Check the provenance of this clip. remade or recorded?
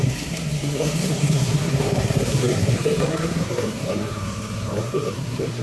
remade